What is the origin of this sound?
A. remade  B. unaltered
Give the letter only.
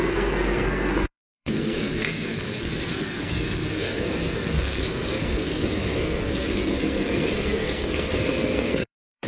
A